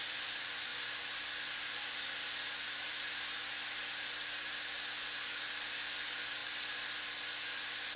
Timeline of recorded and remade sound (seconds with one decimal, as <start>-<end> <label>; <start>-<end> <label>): 0.0-0.7 recorded; 0.7-5.5 remade; 5.5-6.4 recorded; 6.4-7.0 remade; 7.0-8.0 recorded